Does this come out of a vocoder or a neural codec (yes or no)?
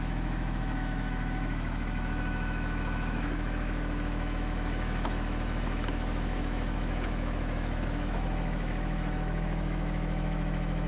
yes